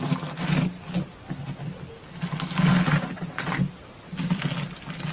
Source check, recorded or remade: recorded